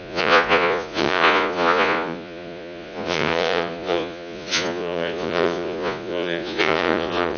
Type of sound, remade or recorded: remade